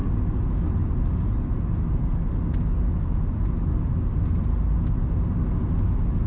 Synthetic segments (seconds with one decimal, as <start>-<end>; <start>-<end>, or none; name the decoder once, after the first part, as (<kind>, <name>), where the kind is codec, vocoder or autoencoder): none

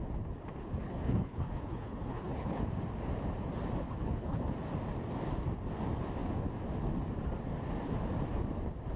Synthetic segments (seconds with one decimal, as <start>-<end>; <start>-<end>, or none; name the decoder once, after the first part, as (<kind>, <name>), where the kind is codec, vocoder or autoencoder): 0.6-2.6 (codec, HILCodec); 3.8-4.4

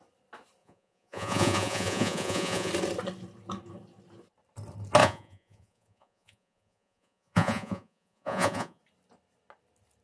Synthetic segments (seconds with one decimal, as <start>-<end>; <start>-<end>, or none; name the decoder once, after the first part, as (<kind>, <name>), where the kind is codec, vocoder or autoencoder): 0.6-2.7 (vocoder, Vocos); 5.0-8.8

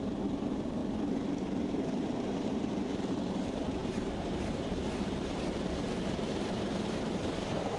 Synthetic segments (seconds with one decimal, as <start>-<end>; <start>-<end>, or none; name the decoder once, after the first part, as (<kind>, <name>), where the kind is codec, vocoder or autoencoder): 0.0-0.8 (vocoder, BigVGAN v2); 1.7-7.8

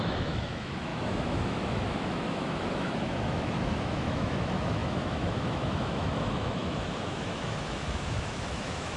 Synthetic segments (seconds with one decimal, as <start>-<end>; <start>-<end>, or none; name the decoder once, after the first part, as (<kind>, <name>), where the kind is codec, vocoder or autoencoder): 0.0-9.0 (autoencoder, DAC-VAE)

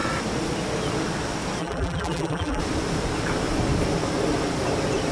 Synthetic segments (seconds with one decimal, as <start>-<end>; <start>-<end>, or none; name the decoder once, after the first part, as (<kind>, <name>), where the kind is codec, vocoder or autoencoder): 1.6-2.6 (vocoder, BigVGAN v2)